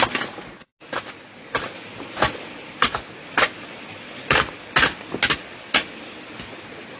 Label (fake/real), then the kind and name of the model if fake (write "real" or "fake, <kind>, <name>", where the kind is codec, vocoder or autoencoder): real